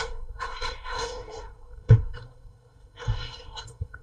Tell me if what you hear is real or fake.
fake